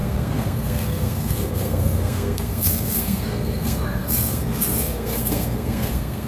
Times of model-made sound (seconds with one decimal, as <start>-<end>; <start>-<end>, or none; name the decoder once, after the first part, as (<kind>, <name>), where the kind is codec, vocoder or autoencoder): 0.0-6.3 (codec, SNAC)